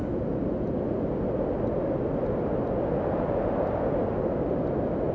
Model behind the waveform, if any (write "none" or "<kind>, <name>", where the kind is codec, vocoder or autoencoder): none